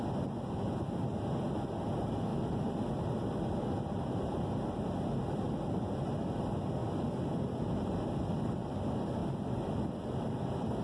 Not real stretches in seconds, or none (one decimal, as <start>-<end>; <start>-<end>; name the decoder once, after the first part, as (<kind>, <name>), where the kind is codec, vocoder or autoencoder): none